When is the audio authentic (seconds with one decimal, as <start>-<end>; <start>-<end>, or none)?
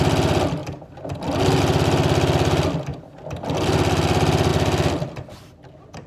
0.0-6.1